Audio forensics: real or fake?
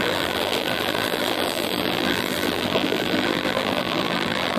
fake